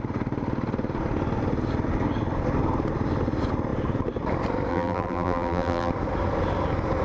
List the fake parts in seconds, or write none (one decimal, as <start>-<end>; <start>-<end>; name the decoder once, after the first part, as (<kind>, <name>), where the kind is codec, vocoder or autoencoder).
4.7-5.9 (vocoder, BigVGAN v2)